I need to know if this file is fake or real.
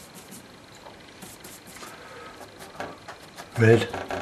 real